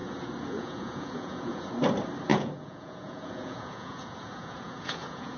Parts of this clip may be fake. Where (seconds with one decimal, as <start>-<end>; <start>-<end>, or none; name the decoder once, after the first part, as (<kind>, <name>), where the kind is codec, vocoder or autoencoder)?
0.0-1.7 (vocoder, Vocos); 2.3-5.4